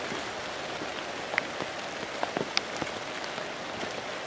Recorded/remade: recorded